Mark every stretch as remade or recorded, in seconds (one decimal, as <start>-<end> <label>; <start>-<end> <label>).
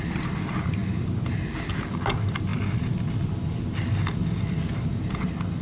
0.0-5.6 recorded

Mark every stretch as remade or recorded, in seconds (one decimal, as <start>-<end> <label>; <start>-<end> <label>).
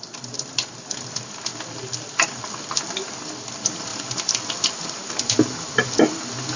0.0-6.6 recorded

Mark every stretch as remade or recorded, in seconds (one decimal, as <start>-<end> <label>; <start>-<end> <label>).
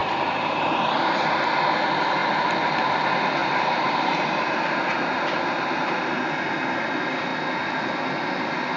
0.0-0.9 remade; 0.9-2.2 recorded; 2.2-3.0 remade; 3.0-3.4 recorded; 3.4-5.5 remade; 5.5-8.8 recorded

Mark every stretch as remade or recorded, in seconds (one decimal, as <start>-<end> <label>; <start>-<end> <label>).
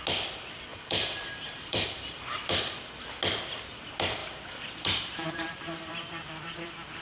0.0-0.7 recorded; 0.7-2.8 remade; 2.8-4.2 recorded; 4.2-5.9 remade; 5.9-7.0 recorded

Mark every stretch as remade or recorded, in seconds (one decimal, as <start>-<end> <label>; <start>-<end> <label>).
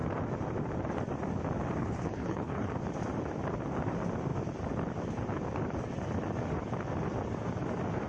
0.0-1.8 recorded; 1.8-2.7 remade; 2.7-8.1 recorded